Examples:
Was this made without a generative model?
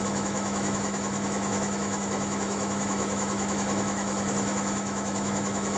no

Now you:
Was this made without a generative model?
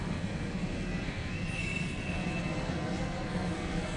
no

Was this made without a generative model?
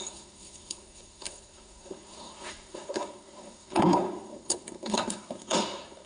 no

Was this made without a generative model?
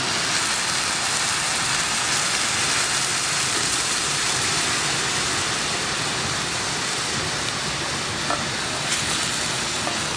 yes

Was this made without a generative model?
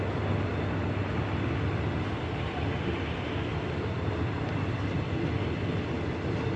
yes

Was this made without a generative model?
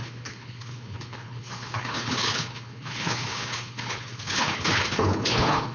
no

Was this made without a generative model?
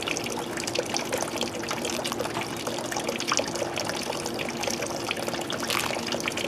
yes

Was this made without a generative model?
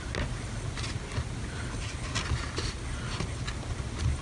yes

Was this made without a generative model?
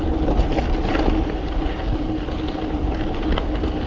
yes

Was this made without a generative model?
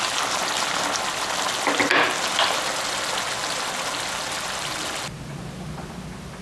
yes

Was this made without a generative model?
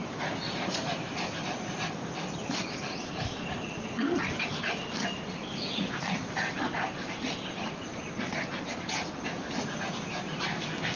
yes